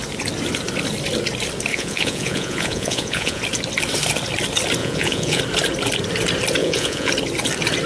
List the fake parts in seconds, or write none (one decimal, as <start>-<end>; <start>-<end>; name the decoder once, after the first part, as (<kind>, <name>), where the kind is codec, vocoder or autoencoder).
1.7-3.4 (vocoder, Vocos); 4.8-5.4; 6.6-7.1